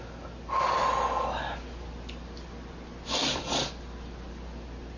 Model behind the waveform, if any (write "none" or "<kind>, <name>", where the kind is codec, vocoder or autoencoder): none